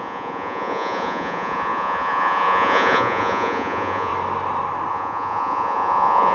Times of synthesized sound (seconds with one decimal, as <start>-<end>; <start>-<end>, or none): 0.0-4.1; 4.9-6.3